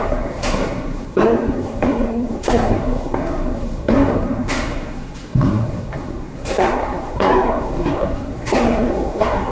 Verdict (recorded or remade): remade